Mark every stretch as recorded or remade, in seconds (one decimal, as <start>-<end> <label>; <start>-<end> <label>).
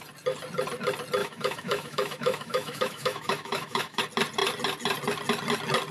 0.0-1.2 recorded; 1.2-4.0 remade; 4.0-5.9 recorded